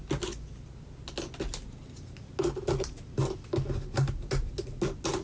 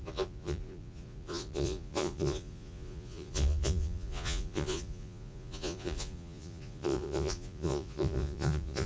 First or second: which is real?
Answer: first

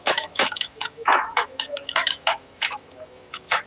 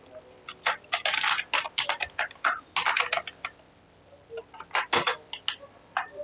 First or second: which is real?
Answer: second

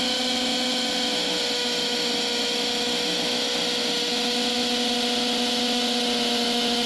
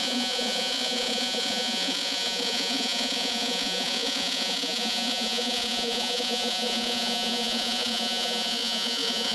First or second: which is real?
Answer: first